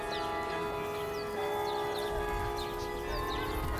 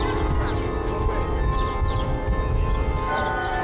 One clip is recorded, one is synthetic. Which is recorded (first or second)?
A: first